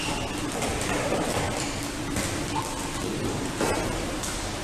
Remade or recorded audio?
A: recorded